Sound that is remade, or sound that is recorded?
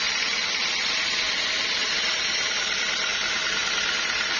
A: recorded